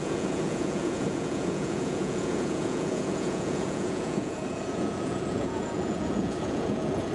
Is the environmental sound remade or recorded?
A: remade